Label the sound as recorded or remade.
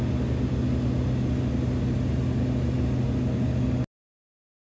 recorded